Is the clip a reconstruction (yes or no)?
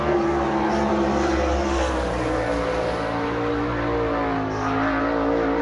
no